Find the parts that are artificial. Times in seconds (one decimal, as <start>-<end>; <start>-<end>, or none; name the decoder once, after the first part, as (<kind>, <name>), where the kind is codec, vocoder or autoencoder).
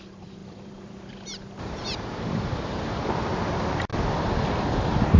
0.4-2.0 (vocoder, BigVGAN v2)